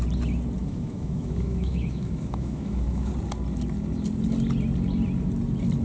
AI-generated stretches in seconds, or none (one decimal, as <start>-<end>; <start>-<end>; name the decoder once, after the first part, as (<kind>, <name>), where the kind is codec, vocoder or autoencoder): 0.6-3.1 (autoencoder, DAC-VAE)